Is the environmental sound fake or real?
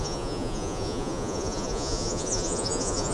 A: fake